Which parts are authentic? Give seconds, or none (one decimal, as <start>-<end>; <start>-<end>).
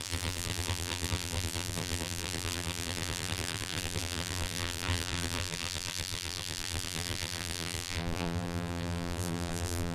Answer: none